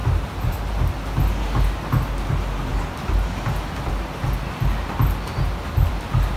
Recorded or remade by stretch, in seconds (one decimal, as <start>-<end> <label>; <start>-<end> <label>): 0.0-6.4 recorded